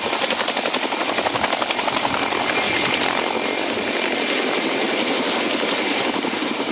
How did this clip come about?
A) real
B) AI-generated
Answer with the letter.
B